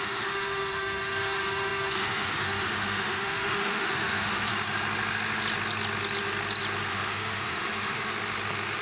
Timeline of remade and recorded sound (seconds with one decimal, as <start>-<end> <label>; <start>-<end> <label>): 0.0-4.5 remade; 4.5-6.9 recorded; 6.9-8.1 remade; 8.1-8.8 recorded